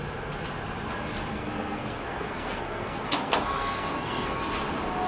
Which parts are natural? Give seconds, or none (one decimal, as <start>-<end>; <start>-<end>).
0.0-1.3; 4.4-5.1